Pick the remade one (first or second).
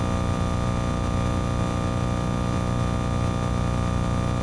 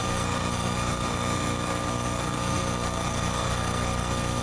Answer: second